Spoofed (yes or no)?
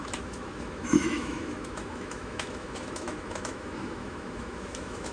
yes